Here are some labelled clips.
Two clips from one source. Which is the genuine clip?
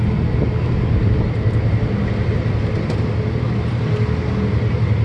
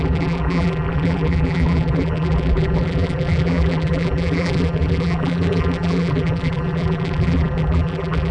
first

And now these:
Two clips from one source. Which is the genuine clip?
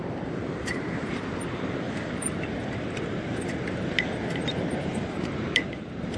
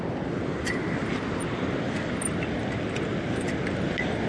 second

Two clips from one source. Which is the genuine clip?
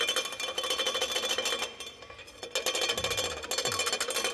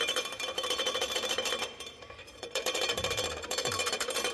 first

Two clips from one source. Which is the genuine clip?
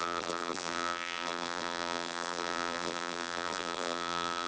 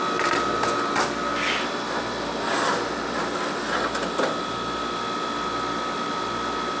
second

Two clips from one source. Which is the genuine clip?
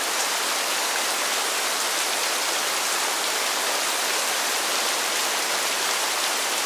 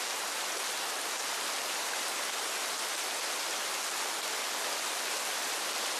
second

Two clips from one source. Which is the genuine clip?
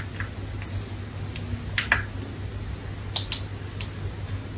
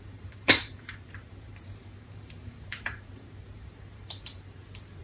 first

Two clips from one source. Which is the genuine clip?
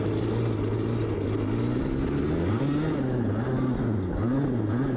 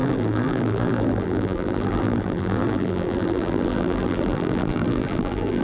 first